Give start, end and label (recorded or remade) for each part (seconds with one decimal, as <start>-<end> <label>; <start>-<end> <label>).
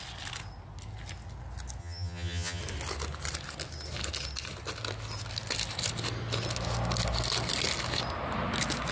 0.0-1.8 recorded; 1.8-2.6 remade; 2.6-8.9 recorded